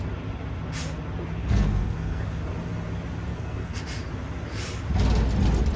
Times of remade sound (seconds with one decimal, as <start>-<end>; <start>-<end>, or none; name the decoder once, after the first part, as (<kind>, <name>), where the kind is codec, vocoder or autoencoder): 1.4-2.4 (codec, SNAC); 3.3-3.8